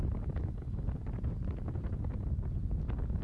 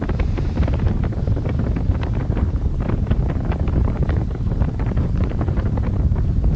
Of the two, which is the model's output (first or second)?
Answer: second